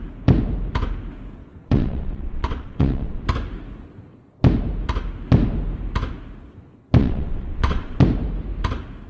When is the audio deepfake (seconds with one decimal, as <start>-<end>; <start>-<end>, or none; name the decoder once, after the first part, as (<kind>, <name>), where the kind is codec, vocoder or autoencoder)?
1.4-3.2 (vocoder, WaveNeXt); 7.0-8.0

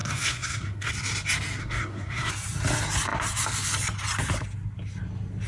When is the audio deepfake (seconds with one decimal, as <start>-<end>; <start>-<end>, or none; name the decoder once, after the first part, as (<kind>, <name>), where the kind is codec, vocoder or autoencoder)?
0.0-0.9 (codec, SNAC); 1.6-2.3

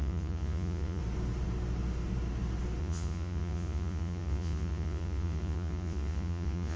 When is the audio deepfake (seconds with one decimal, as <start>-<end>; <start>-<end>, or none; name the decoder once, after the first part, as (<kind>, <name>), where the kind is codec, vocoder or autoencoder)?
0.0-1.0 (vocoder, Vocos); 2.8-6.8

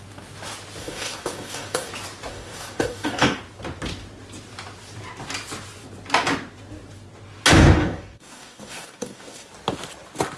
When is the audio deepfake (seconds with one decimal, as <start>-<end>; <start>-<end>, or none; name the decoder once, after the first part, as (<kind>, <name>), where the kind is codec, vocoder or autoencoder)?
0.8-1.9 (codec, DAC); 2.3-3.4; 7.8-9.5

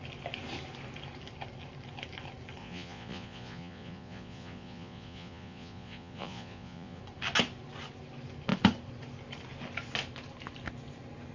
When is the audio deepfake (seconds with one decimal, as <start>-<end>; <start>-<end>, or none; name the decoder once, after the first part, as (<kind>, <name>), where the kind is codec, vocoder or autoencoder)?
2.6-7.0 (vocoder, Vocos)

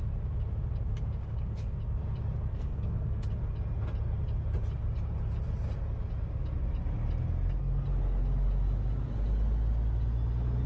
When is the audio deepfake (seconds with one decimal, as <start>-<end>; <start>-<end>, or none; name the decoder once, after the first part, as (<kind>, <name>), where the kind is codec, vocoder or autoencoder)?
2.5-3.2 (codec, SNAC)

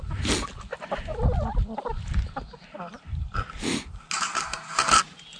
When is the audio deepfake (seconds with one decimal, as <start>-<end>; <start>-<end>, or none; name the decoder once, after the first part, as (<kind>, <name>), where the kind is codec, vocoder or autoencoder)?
none

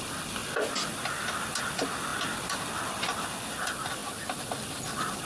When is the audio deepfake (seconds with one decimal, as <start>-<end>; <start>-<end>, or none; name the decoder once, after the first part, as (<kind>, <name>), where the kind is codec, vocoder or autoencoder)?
none